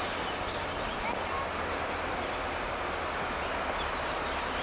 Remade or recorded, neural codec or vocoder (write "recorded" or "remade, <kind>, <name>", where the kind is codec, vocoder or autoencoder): recorded